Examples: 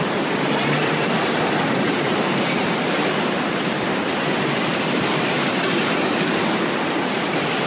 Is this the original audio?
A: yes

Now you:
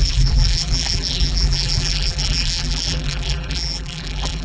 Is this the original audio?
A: no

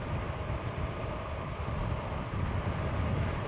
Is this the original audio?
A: no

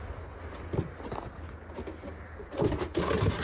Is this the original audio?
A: yes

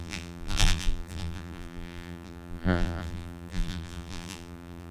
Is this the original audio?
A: no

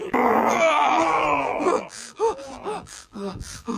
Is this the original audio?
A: no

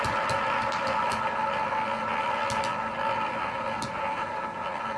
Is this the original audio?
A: yes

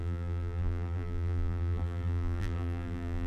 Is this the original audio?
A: no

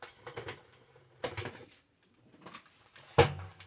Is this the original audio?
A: yes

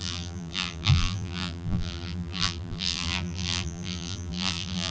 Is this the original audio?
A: no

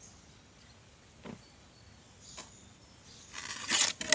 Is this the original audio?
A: yes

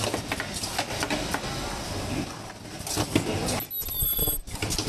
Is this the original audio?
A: yes